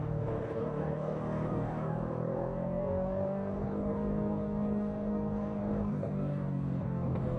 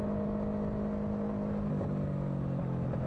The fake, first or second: first